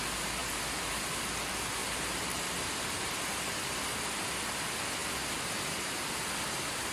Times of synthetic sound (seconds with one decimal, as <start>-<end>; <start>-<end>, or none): 1.8-3.1